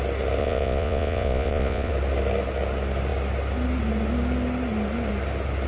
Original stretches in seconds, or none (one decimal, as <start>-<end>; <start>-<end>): 0.0-0.4; 1.9-5.7